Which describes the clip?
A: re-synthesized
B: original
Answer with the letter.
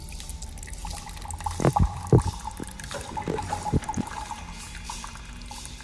B